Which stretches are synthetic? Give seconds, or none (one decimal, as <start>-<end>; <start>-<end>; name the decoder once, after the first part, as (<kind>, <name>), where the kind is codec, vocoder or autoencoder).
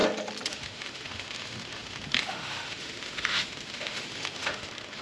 0.5-5.0 (autoencoder, DAC-VAE)